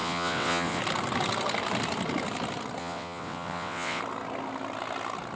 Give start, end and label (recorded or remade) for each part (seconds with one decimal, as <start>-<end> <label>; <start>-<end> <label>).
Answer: 0.0-0.8 remade; 0.8-2.8 recorded; 2.8-4.0 remade; 4.0-5.4 recorded